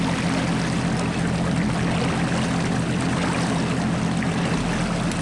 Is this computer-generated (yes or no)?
no